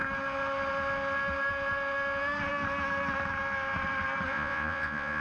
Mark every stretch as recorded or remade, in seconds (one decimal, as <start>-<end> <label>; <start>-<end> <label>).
0.0-4.3 recorded; 4.3-5.2 remade